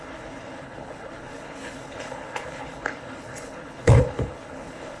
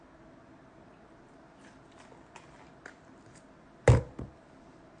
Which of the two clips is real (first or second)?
second